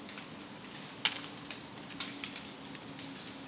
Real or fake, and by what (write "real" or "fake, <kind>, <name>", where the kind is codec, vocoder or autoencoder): real